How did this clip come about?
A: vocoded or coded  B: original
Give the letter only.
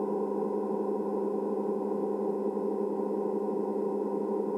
B